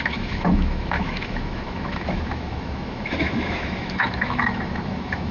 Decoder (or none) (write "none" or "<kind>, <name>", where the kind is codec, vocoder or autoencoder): autoencoder, DAC-VAE